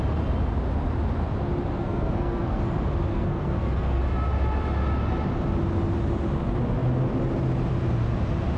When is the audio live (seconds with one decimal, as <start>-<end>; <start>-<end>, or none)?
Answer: 0.0-1.8; 2.6-3.1; 4.0-8.6